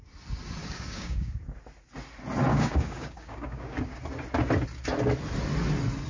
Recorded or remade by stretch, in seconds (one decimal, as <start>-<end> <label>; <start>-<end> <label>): 0.0-0.6 recorded; 0.6-1.4 remade; 1.4-2.5 recorded; 2.5-4.0 remade; 4.0-6.1 recorded